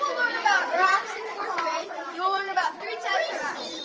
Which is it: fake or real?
fake